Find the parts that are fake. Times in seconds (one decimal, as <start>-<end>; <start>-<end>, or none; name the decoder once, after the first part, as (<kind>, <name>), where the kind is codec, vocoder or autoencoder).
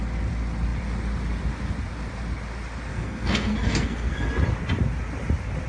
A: 2.9-4.3 (codec, SNAC)